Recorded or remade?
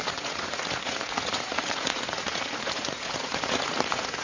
remade